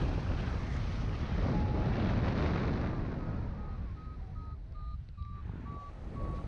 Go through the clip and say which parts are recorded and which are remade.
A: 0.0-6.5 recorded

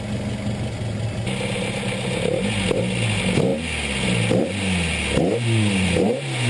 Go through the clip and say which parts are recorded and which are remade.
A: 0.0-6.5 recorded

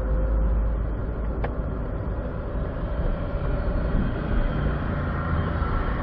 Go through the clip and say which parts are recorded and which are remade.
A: 0.0-6.0 recorded